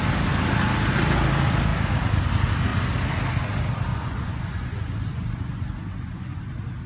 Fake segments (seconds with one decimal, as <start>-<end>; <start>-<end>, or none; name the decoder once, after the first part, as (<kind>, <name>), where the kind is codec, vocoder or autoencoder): 3.9-6.4 (vocoder, Vocos)

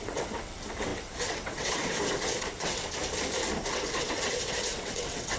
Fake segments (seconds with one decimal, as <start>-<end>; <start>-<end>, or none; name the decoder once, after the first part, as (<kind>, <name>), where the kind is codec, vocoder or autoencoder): 0.0-2.8 (vocoder, WaveNeXt); 3.7-5.4

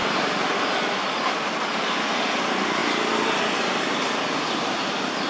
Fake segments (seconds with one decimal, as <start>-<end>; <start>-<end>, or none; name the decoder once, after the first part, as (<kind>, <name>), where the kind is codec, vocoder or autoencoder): none

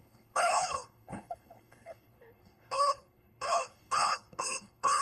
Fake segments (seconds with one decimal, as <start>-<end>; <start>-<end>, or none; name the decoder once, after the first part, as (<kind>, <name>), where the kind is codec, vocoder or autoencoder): 0.0-5.0 (codec, HILCodec)

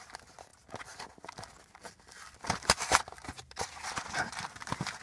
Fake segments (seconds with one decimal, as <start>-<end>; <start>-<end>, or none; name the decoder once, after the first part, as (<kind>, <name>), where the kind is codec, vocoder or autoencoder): none

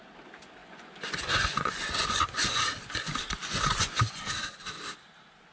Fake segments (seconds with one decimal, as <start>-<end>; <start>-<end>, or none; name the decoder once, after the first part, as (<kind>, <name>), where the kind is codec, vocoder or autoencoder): 0.6-2.6 (vocoder, Vocos); 3.4-4.2

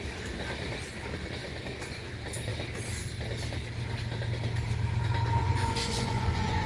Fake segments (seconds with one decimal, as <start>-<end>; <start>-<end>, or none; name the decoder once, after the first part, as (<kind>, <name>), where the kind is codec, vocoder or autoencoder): 1.4-2.1 (vocoder, Vocos); 5.4-6.7

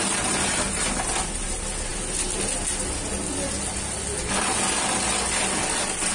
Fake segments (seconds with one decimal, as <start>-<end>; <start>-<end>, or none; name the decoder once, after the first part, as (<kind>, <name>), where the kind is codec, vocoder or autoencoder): none